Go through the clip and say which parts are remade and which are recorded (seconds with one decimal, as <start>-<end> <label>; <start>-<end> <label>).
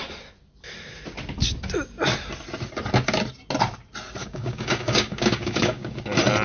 0.0-4.2 recorded; 4.2-6.0 remade; 6.0-6.4 recorded